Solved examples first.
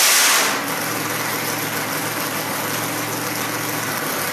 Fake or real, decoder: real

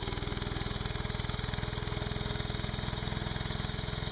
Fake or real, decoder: real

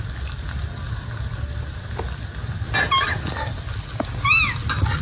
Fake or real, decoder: real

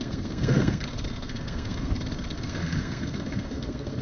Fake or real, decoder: fake, codec, SNAC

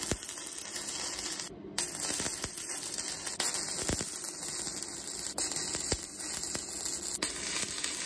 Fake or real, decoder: real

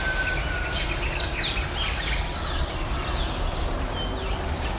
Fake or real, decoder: real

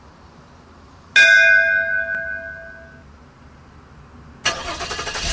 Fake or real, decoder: real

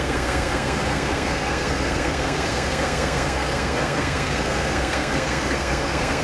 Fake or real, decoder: fake, codec, SNAC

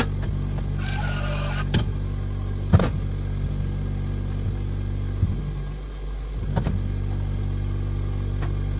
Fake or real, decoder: real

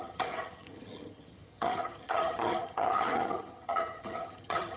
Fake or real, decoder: fake, vocoder, HiFi-GAN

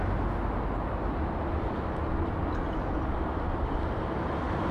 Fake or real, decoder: real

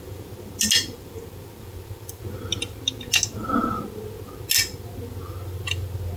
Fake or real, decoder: real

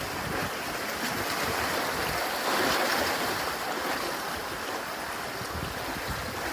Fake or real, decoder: real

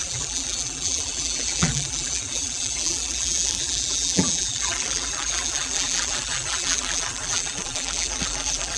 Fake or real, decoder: fake, vocoder, BigVGAN v2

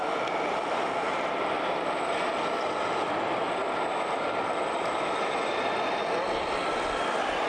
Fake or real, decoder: real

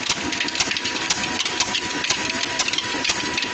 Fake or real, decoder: fake, vocoder, BigVGAN v2